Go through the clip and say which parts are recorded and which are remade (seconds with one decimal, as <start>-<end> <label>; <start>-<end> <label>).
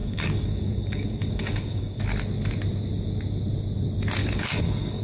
0.0-2.0 remade; 2.0-4.2 recorded; 4.2-5.0 remade